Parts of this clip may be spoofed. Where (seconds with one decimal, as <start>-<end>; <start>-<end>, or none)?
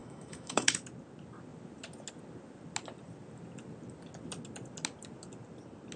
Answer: 0.0-0.7